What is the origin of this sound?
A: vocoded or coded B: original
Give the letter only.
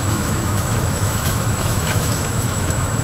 A